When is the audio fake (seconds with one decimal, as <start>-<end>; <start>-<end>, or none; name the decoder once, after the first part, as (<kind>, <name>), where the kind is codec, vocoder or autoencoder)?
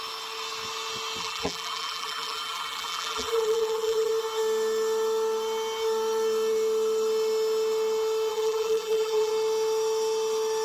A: 1.2-4.1 (vocoder, BigVGAN v2); 8.3-9.3